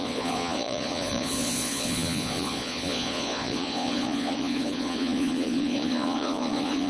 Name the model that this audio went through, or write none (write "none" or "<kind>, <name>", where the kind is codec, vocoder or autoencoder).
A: vocoder, Vocos